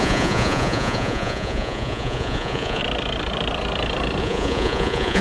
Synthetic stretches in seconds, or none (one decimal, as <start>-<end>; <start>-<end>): 0.0-2.8; 4.2-5.2